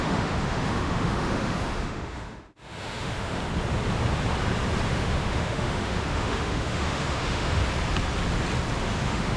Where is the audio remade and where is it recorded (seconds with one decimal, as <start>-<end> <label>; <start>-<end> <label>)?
0.0-3.4 remade; 3.4-4.9 recorded; 4.9-7.6 remade; 7.6-8.8 recorded; 8.8-9.4 remade